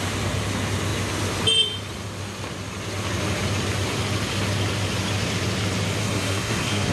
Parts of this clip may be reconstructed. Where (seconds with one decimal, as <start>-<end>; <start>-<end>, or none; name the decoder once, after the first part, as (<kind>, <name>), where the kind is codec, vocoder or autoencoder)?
6.0-6.9 (codec, SNAC)